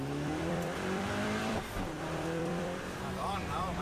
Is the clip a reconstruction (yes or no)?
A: yes